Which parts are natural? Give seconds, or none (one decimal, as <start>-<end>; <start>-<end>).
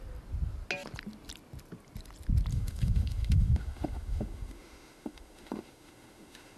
0.0-2.5